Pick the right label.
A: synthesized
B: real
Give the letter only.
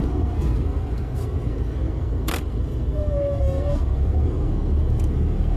A